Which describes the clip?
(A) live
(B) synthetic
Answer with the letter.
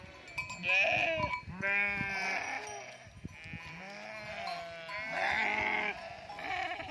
A